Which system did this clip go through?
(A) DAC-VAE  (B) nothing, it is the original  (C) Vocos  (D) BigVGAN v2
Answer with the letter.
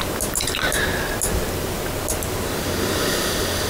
B